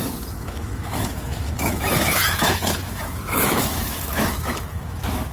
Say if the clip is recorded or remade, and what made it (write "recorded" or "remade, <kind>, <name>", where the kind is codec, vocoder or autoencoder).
remade, autoencoder, DAC-VAE